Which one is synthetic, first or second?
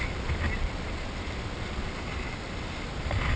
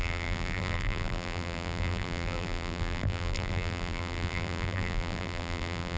second